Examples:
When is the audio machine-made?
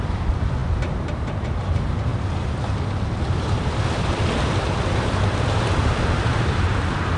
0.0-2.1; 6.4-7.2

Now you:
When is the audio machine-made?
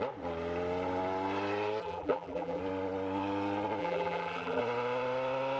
1.8-2.6; 3.8-4.6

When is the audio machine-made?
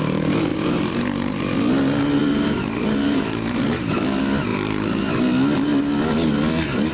0.5-1.5; 2.2-3.9